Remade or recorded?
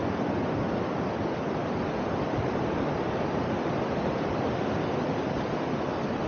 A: recorded